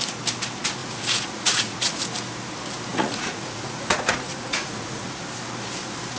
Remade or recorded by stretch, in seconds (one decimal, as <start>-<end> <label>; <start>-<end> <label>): 0.0-0.8 recorded; 0.8-2.0 remade; 2.0-2.9 recorded; 2.9-5.2 remade; 5.2-6.2 recorded